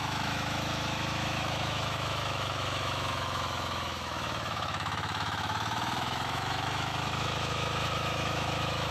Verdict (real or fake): fake